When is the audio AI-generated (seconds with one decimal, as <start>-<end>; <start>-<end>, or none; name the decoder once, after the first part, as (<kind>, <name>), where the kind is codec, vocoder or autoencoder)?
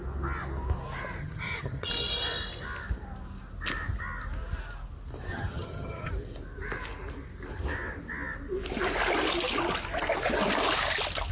1.2-1.9 (vocoder, HiFi-GAN); 5.3-6.1